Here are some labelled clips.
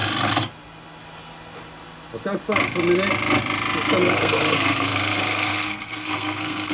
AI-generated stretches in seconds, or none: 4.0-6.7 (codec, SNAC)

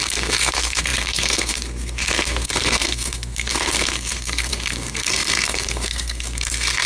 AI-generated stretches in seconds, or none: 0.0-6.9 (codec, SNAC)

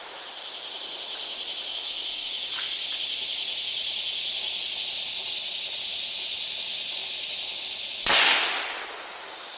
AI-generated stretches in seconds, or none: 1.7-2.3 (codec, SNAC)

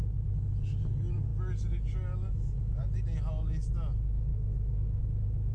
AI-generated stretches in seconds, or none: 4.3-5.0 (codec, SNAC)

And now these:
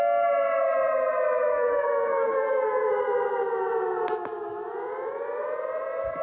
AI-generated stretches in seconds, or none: 1.5-2.9 (codec, SNAC)

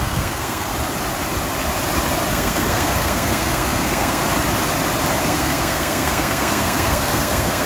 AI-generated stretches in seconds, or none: 0.0-0.7 (codec, SNAC); 2.3-4.2; 5.2-7.7

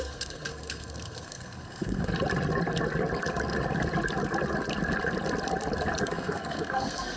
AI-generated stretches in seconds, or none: 0.0-2.1 (codec, SNAC); 6.0-7.2

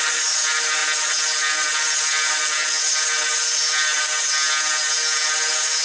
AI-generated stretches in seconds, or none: none